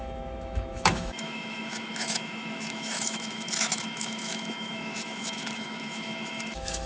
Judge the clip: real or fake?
fake